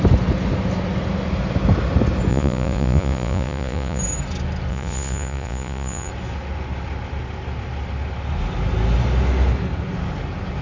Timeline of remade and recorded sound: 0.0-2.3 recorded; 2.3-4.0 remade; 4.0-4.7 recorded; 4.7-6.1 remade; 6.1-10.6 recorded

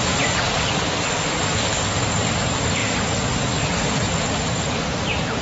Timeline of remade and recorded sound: 0.0-5.4 remade

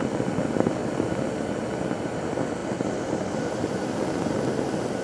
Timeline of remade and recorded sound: 0.0-5.0 recorded

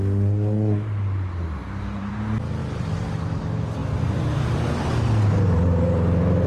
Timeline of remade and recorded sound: 0.0-1.6 recorded; 1.6-2.1 remade; 2.1-3.8 recorded; 3.8-4.6 remade; 4.6-6.5 recorded

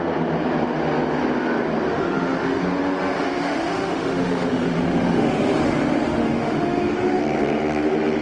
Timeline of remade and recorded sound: 0.0-1.9 recorded; 1.9-2.6 remade; 2.6-3.1 recorded; 3.1-7.2 remade; 7.2-8.2 recorded

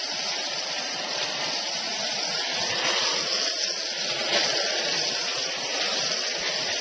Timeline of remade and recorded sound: 0.0-6.8 recorded